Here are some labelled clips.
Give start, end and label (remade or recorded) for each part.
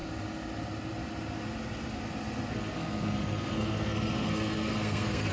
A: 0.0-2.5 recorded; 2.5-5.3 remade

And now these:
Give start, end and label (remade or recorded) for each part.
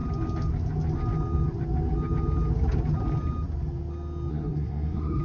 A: 0.0-4.3 recorded; 4.3-5.2 remade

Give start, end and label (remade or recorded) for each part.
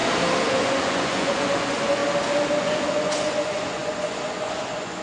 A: 0.0-0.5 recorded; 0.5-2.0 remade; 2.0-2.6 recorded; 2.6-5.0 remade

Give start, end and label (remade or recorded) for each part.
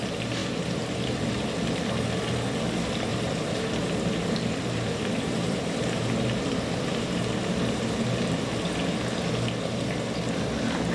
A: 0.0-0.4 recorded; 0.4-1.4 remade; 1.4-3.1 recorded; 3.1-8.4 remade; 8.4-10.9 recorded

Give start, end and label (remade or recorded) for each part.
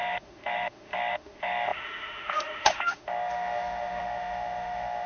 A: 0.0-5.1 remade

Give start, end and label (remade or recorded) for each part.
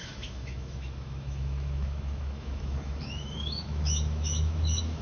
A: 0.0-5.0 remade